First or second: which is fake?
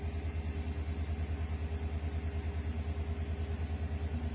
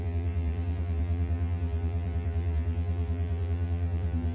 second